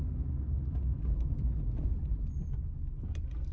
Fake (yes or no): no